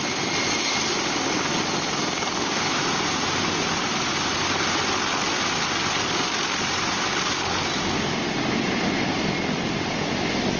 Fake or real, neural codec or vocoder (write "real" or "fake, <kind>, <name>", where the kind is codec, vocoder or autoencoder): real